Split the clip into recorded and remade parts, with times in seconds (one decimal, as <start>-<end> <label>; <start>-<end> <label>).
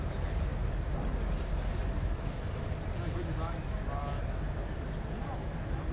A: 0.0-5.9 recorded